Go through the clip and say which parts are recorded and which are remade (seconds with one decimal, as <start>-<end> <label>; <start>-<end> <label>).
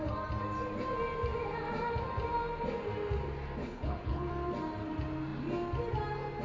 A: 0.0-3.6 recorded; 3.6-4.3 remade; 4.3-6.4 recorded